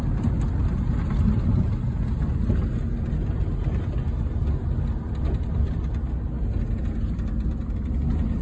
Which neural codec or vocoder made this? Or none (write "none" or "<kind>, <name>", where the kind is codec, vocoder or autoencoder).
none